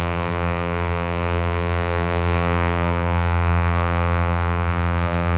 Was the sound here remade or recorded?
remade